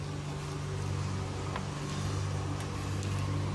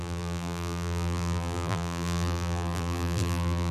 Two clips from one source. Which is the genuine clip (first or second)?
first